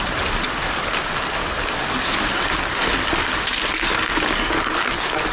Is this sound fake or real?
real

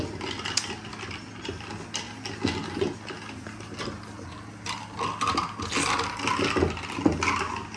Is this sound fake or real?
real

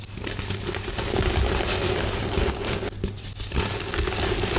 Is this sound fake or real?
real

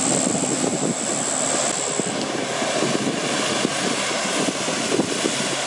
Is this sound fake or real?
real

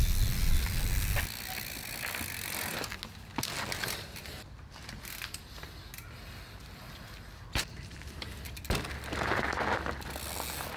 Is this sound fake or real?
real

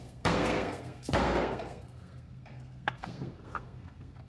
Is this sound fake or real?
fake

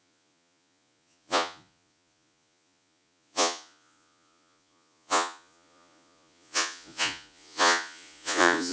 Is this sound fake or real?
fake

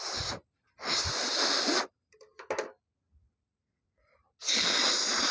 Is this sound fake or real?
real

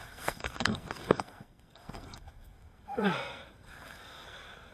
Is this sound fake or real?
fake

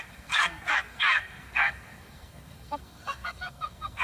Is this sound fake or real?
fake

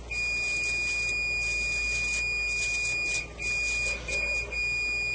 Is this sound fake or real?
real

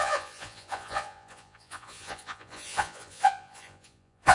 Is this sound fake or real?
fake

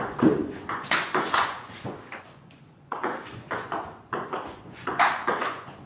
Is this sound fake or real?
fake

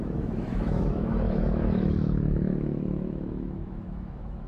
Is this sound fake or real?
fake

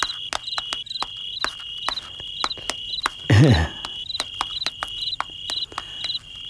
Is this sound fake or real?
real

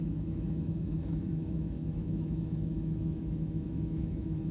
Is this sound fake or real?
fake